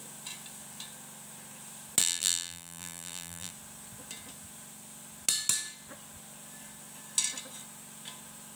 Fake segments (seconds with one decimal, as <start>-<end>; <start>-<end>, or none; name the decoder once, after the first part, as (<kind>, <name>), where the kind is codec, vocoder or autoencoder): 2.0-3.5 (vocoder, BigVGAN v2)